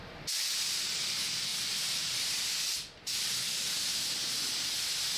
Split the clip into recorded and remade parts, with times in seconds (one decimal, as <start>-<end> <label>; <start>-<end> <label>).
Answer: 0.0-1.5 recorded; 1.5-4.0 remade; 4.0-5.2 recorded